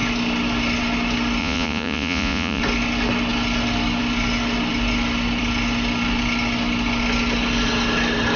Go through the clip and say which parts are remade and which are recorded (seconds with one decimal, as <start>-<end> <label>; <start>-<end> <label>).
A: 0.0-1.4 recorded; 1.4-2.6 remade; 2.6-8.4 recorded